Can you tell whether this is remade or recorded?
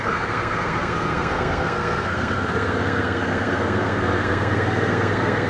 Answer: remade